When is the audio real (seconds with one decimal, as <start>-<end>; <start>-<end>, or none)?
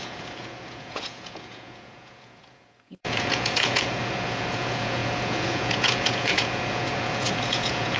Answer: none